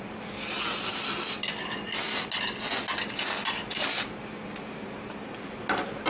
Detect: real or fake real